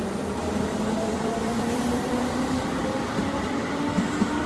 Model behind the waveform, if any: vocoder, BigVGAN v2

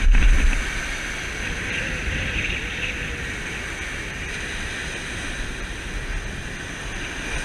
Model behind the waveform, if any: none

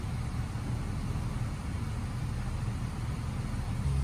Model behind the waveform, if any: none